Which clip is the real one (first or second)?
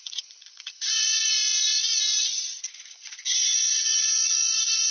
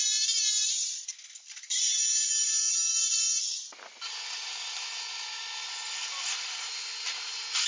second